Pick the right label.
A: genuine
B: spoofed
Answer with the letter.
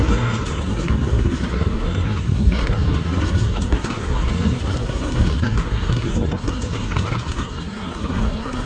B